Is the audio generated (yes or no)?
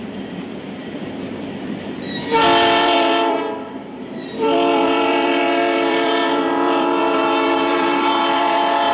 yes